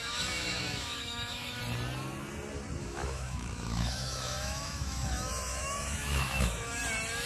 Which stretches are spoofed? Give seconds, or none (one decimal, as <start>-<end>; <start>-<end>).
0.0-1.6; 2.8-6.8